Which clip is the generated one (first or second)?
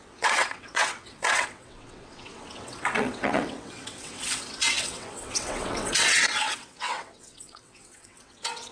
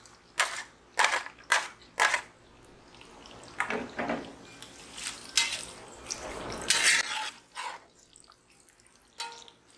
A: first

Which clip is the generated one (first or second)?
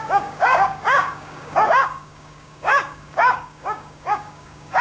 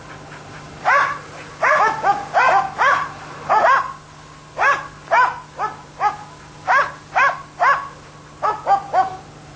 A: first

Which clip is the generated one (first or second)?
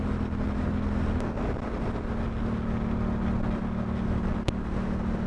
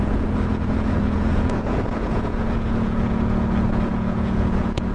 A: second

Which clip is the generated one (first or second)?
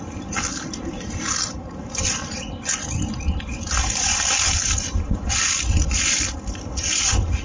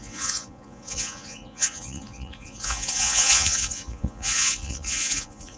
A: second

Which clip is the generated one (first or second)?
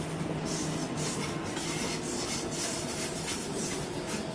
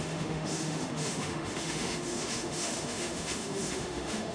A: second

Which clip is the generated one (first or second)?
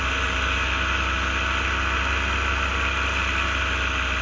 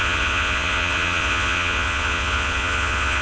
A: second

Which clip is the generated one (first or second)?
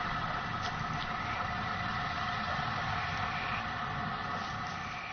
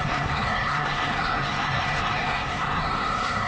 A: second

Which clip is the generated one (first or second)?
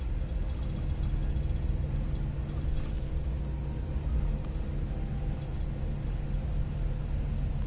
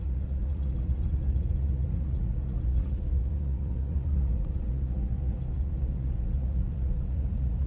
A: second